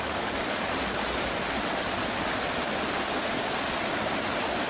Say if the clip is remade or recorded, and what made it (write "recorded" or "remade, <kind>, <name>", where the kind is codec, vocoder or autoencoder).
recorded